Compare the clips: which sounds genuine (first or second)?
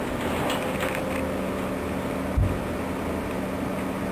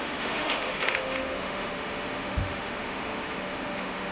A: first